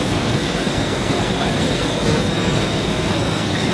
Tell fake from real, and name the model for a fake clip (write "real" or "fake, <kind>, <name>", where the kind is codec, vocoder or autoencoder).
fake, codec, SNAC